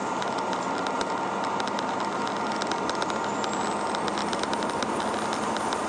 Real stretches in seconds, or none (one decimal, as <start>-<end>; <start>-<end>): 0.0-5.9